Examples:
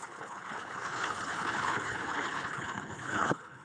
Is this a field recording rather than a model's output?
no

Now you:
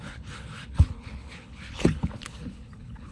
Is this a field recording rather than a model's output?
no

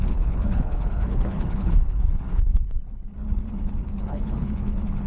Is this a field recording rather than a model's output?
no